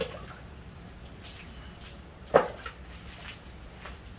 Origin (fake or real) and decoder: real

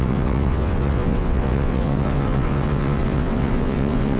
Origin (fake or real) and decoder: fake, vocoder, WaveNeXt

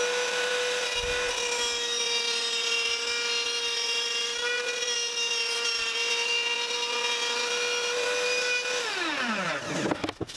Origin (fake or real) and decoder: real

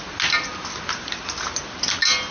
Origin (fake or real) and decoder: real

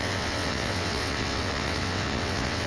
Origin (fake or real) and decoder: fake, vocoder, WaveNeXt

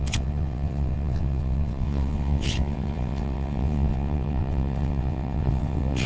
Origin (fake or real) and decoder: fake, vocoder, WaveNeXt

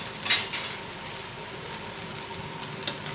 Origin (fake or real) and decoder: real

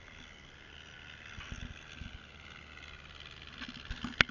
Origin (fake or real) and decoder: real